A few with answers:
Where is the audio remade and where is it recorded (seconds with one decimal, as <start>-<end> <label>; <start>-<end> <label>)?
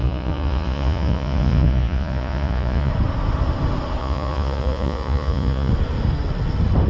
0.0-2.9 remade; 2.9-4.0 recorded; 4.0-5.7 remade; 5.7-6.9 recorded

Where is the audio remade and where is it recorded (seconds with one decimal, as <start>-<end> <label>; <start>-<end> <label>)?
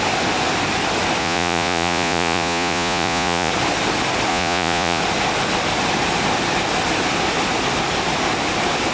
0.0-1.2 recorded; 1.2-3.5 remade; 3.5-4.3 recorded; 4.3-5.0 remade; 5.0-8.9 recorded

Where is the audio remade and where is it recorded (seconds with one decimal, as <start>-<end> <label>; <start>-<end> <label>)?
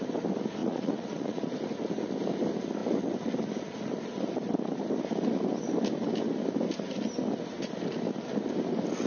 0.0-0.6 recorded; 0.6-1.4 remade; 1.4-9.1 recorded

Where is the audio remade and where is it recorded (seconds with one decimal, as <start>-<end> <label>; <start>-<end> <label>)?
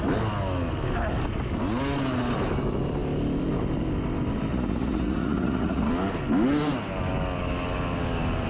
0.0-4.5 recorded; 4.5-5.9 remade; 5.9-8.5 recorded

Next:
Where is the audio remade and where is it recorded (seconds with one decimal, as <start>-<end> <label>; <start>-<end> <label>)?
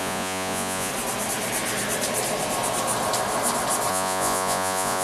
0.0-0.9 remade; 0.9-3.9 recorded; 3.9-5.0 remade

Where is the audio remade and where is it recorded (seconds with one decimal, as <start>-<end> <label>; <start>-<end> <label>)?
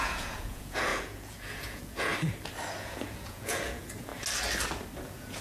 0.0-2.1 remade; 2.1-2.8 recorded; 2.8-4.1 remade; 4.1-5.0 recorded; 5.0-5.4 remade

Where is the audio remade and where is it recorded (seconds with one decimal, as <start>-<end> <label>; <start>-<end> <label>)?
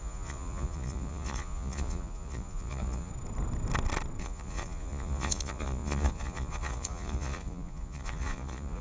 0.0-3.1 remade; 3.1-4.2 recorded; 4.2-8.8 remade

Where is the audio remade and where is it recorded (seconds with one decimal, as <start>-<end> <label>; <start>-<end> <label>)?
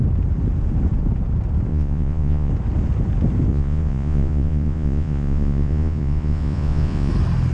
0.0-1.7 recorded; 1.7-2.5 remade; 2.5-3.5 recorded; 3.5-7.1 remade; 7.1-7.5 recorded